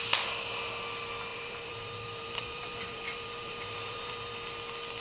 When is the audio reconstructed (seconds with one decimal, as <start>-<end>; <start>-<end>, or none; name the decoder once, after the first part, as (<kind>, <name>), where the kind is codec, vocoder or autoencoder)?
1.3-4.3 (vocoder, BigVGAN v2)